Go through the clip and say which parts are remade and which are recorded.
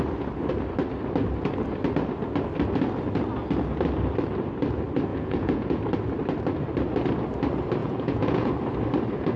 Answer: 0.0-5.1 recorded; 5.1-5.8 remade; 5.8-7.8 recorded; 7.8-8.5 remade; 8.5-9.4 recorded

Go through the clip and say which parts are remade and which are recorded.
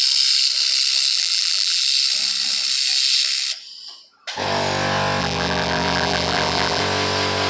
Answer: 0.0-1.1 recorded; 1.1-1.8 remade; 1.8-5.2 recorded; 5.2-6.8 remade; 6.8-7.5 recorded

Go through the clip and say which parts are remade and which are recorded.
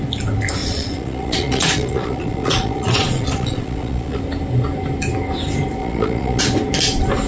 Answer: 0.0-0.6 recorded; 0.6-4.2 remade; 4.2-5.8 recorded; 5.8-6.4 remade; 6.4-7.3 recorded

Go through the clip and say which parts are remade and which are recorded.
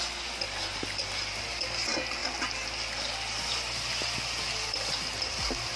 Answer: 0.0-5.8 recorded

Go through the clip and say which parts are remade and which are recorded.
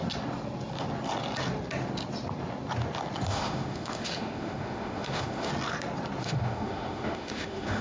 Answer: 0.0-3.3 recorded; 3.3-5.5 remade; 5.5-6.2 recorded; 6.2-7.8 remade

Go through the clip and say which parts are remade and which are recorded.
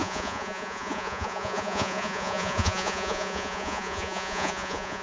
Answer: 0.0-5.0 remade